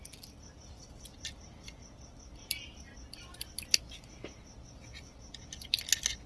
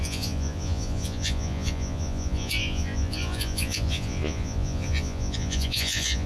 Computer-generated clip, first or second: second